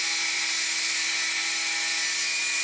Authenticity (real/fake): real